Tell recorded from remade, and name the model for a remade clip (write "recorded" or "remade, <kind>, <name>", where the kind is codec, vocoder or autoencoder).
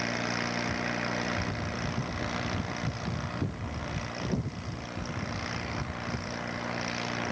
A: recorded